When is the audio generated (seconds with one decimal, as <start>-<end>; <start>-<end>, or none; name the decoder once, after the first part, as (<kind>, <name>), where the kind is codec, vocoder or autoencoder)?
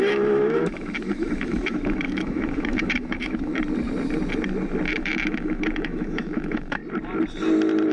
0.0-3.5 (autoencoder, DAC-VAE); 4.9-6.8